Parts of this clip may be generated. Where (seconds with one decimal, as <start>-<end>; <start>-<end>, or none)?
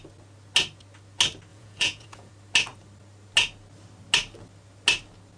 1.5-2.3